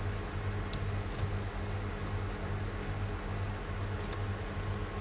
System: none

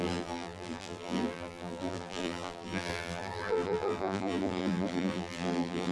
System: vocoder, BigVGAN v2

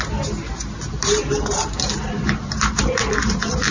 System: vocoder, BigVGAN v2